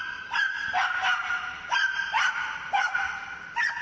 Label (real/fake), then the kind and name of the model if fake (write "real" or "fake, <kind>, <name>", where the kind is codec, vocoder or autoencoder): real